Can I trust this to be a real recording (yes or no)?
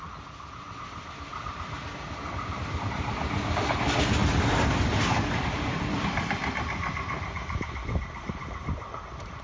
yes